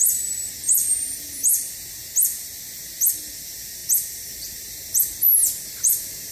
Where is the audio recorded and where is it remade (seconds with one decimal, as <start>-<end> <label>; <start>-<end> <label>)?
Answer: 0.0-6.3 recorded